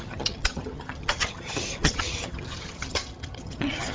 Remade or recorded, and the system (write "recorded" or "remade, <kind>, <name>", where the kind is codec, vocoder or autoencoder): remade, vocoder, HiFi-GAN